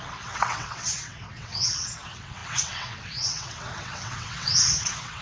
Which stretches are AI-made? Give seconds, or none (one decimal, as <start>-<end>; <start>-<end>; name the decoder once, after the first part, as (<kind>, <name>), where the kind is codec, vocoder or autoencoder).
0.0-5.2 (vocoder, WaveNeXt)